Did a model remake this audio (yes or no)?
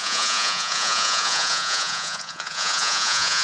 yes